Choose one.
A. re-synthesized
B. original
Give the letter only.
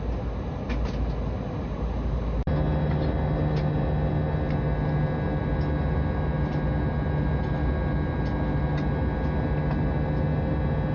B